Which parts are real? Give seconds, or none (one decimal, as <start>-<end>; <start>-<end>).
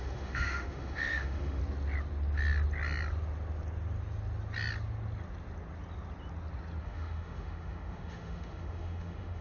1.6-6.8